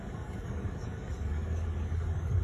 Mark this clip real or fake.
fake